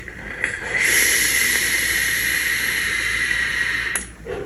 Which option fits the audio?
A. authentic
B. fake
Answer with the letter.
A